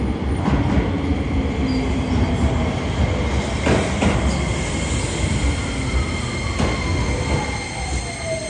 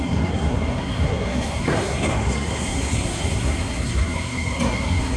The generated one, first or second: second